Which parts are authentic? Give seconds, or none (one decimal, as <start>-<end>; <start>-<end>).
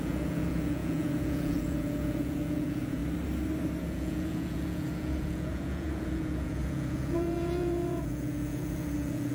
3.0-3.8